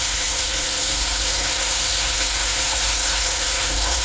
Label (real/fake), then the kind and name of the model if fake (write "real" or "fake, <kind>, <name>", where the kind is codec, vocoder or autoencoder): fake, codec, SNAC